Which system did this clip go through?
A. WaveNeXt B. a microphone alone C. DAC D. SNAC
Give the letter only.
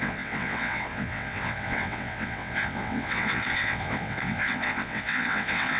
A